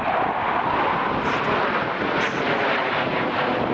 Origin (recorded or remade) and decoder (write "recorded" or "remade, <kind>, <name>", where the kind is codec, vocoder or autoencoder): recorded